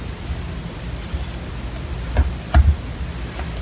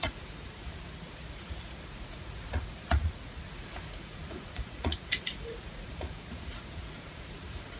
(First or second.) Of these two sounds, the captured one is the first